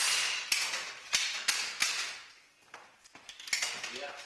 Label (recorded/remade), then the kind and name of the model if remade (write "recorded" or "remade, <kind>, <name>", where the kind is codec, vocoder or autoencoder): recorded